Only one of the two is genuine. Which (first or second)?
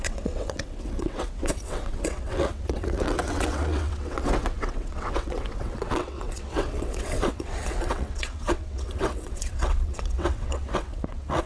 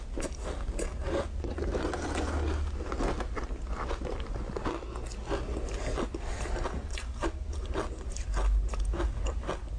second